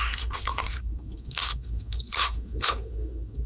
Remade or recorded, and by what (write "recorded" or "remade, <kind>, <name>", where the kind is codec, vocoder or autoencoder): remade, codec, SNAC